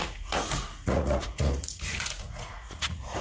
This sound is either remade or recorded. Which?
remade